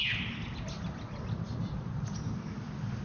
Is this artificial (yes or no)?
no